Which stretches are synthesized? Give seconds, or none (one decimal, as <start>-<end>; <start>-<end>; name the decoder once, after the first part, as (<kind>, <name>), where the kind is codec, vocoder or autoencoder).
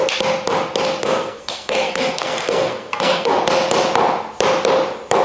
1.0-3.4 (codec, SNAC)